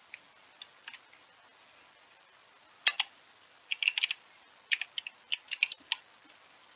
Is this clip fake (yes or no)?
no